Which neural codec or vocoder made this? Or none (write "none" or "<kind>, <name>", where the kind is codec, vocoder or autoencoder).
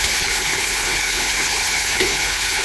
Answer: codec, HILCodec